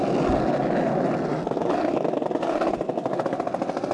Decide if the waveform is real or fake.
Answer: real